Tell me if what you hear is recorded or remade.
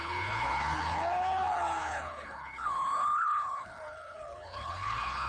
remade